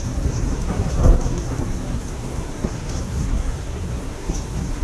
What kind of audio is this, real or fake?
fake